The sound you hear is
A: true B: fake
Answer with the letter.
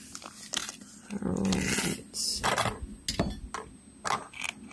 A